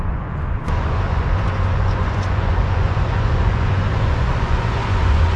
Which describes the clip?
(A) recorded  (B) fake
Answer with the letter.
B